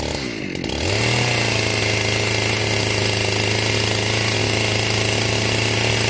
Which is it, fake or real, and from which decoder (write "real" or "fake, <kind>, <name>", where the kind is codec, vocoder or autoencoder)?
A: real